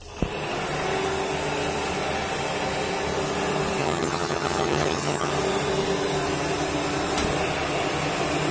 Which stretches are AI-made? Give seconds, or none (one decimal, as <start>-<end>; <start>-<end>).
3.8-5.3